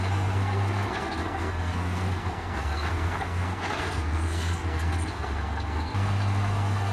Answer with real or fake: fake